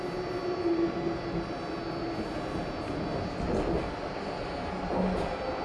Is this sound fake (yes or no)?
no